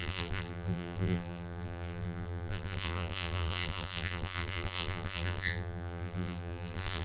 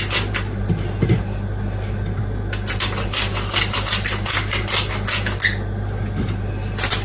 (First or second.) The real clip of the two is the second